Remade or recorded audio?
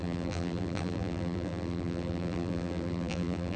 remade